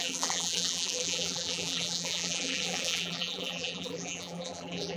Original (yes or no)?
no